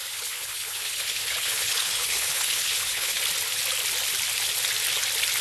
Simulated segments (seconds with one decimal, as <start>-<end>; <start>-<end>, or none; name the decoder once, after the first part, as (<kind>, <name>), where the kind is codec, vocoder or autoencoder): 0.0-3.2 (codec, HILCodec)